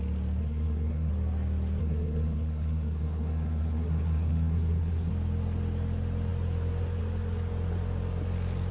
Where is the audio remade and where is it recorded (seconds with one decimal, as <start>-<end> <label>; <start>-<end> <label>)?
0.0-0.4 recorded; 0.4-1.1 remade; 1.1-1.8 recorded; 1.8-5.1 remade; 5.1-8.7 recorded